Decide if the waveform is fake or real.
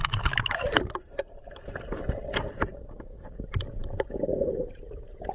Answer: fake